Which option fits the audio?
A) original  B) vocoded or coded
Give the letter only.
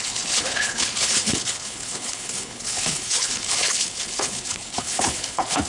B